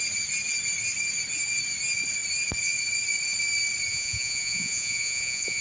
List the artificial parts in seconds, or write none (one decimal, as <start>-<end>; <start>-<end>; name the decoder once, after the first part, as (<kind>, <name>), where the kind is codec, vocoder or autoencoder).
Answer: 3.9-5.6 (vocoder, Vocos)